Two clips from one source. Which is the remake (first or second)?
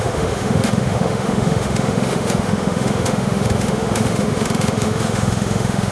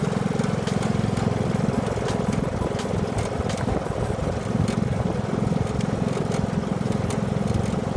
first